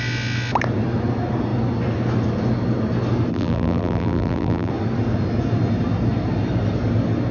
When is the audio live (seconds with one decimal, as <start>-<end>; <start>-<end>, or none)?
0.0-3.3; 4.7-7.3